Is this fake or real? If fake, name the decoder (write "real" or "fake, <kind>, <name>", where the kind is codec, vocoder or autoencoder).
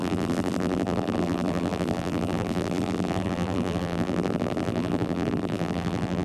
fake, vocoder, BigVGAN v2